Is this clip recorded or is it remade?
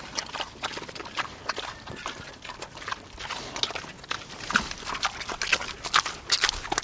recorded